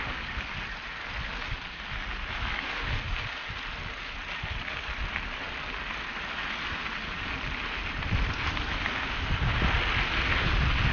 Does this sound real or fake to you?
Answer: real